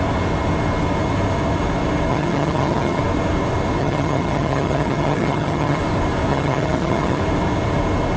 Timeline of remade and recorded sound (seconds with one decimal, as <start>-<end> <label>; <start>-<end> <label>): 0.0-2.1 recorded; 2.1-3.0 remade; 3.0-3.8 recorded; 3.8-5.8 remade; 5.8-6.3 recorded; 6.3-7.2 remade; 7.2-8.2 recorded

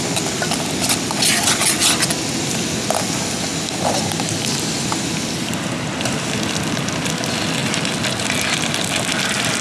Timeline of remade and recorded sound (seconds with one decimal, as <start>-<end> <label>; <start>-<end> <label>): 0.0-9.6 recorded

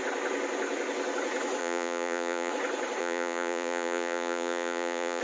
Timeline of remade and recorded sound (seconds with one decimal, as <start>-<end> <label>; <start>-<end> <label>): 0.0-1.6 recorded; 1.6-2.5 remade; 2.5-3.0 recorded; 3.0-5.2 remade

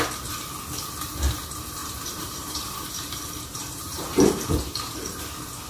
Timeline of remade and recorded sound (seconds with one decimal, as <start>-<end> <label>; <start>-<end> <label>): 0.0-1.8 recorded; 1.8-5.2 remade; 5.2-5.7 recorded

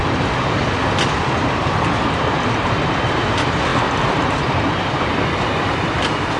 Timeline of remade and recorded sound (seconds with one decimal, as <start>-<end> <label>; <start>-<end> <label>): 0.0-6.4 recorded

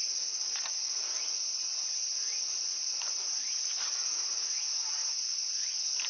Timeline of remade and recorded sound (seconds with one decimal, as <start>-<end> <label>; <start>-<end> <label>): 0.0-6.1 recorded

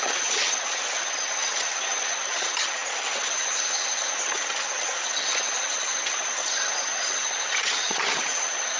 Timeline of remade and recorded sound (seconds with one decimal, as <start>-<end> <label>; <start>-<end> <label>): 0.0-8.8 remade